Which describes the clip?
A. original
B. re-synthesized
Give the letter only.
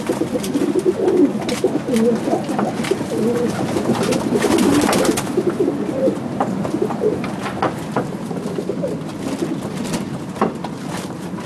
A